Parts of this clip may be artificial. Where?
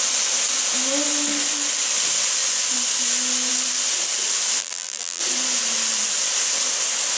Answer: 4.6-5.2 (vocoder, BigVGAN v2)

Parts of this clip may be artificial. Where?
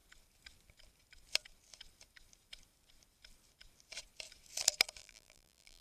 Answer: 5.0-5.8 (vocoder, BigVGAN v2)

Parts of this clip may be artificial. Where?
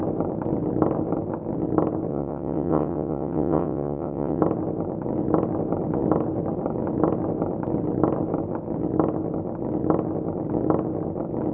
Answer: 2.1-4.4 (vocoder, WaveNeXt)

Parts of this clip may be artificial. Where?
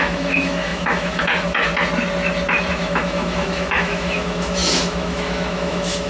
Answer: 0.0-1.7 (autoencoder, DAC-VAE); 2.7-6.1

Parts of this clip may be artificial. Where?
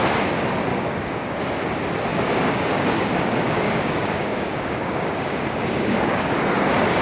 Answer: 0.7-1.4 (codec, DAC); 2.1-6.3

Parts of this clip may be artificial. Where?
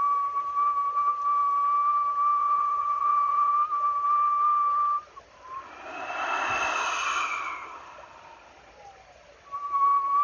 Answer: 2.4-3.5 (vocoder, WaveNeXt)